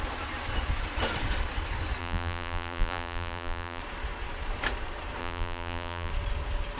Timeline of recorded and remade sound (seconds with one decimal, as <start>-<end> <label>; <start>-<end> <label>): 0.0-2.0 recorded; 2.0-3.8 remade; 3.8-5.2 recorded; 5.2-6.1 remade; 6.1-6.8 recorded